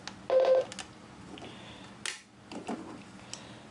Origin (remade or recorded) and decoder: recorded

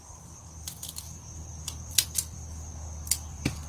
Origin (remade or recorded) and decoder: remade, vocoder, BigVGAN v2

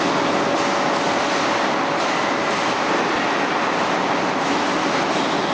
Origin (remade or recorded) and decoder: recorded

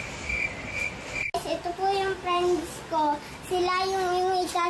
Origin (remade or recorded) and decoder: recorded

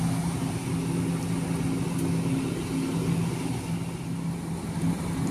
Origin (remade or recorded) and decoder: recorded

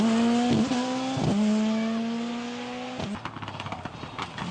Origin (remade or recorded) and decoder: recorded